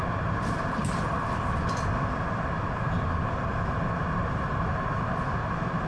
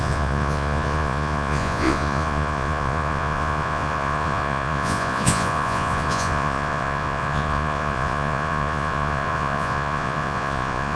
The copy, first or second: second